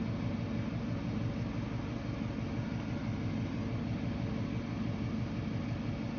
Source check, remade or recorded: recorded